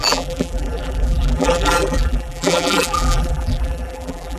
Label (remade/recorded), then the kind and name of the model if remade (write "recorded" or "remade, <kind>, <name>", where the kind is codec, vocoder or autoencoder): remade, vocoder, BigVGAN v2